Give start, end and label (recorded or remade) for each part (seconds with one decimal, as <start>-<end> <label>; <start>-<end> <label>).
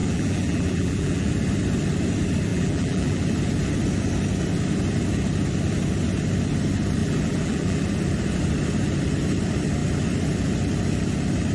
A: 0.0-1.3 remade; 1.3-2.5 recorded; 2.5-3.2 remade; 3.2-7.0 recorded; 7.0-7.8 remade; 7.8-11.5 recorded